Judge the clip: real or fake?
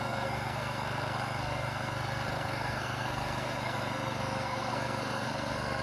fake